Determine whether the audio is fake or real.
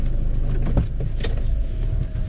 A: real